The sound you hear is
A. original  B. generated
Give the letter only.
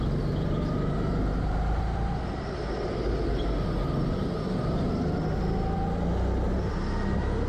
A